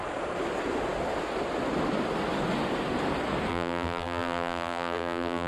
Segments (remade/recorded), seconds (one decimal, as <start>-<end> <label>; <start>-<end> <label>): 0.0-3.5 recorded; 3.5-5.5 remade